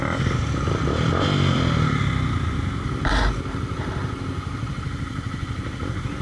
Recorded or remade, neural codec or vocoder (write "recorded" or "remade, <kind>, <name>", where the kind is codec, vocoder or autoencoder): recorded